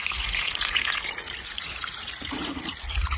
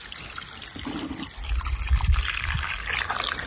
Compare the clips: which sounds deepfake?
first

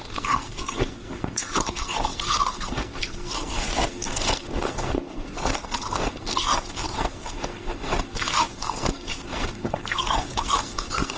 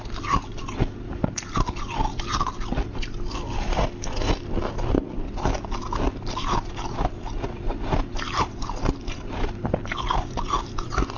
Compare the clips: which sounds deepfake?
first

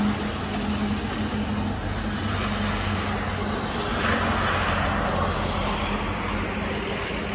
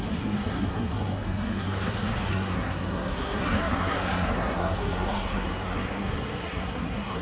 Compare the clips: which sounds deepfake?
second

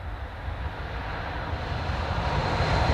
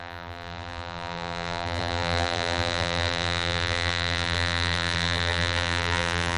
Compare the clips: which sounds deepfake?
second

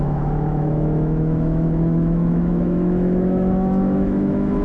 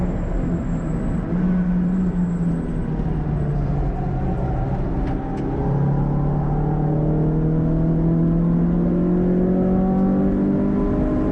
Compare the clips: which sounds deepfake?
first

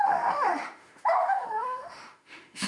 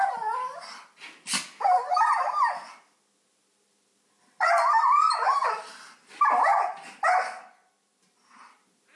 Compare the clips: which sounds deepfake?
first